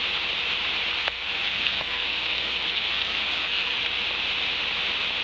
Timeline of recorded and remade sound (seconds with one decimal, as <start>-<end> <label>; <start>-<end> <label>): 0.0-1.0 recorded; 1.0-3.8 remade; 3.8-5.2 recorded